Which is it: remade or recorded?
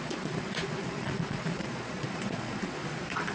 remade